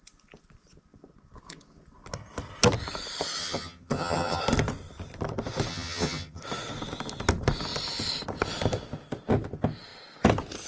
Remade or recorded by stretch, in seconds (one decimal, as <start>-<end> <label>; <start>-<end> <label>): 0.0-3.4 recorded; 3.4-4.4 remade; 4.4-5.7 recorded; 5.7-6.4 remade; 6.4-10.7 recorded